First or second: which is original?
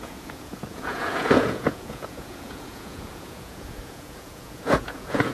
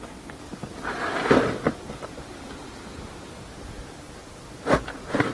second